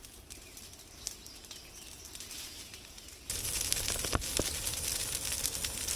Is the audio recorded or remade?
recorded